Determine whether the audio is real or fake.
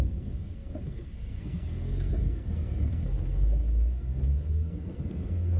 fake